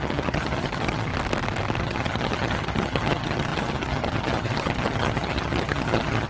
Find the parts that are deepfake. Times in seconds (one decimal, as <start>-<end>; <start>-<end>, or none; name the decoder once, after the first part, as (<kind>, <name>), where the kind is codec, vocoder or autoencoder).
0.0-1.1 (vocoder, HiFi-GAN); 1.8-6.3